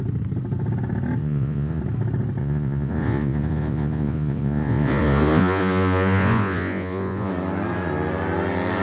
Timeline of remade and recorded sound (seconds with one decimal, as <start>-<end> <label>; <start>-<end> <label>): 0.0-1.2 recorded; 1.2-1.8 remade; 1.8-2.4 recorded; 2.4-7.3 remade; 7.3-8.8 recorded